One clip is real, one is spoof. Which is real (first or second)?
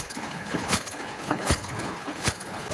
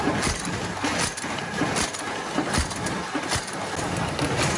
second